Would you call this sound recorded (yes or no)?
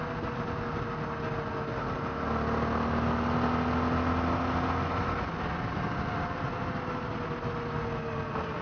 yes